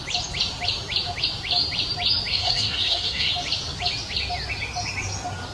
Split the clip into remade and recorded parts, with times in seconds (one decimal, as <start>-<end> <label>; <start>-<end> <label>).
0.0-2.3 recorded; 2.3-3.3 remade; 3.3-5.5 recorded